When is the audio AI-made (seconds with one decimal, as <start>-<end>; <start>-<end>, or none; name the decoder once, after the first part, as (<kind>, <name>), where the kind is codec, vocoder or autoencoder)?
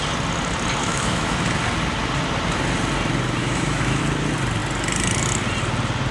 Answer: 0.8-1.4 (autoencoder, DAC-VAE); 3.4-4.0